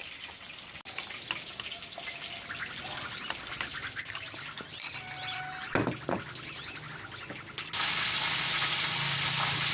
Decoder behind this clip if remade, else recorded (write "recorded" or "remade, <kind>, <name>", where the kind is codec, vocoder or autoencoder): recorded